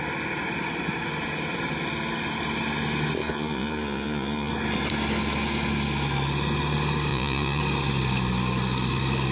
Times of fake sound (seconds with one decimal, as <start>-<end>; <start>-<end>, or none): 3.2-4.5; 7.1-7.6